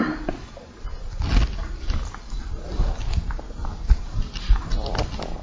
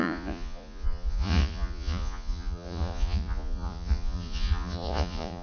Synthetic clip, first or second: second